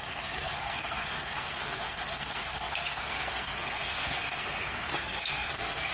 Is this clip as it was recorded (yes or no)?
no